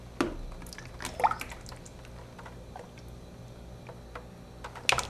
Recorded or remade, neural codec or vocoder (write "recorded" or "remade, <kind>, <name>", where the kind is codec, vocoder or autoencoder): recorded